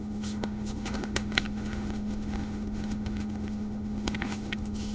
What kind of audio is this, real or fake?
fake